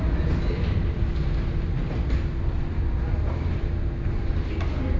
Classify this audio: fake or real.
real